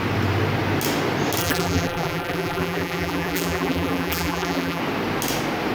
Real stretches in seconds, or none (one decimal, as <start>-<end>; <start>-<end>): 0.0-1.4; 4.8-5.7